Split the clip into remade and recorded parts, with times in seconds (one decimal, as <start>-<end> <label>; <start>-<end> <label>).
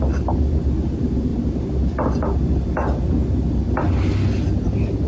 0.0-5.1 recorded